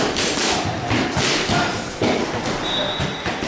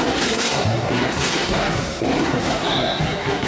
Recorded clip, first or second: first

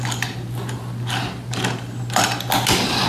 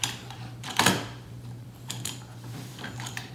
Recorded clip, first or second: first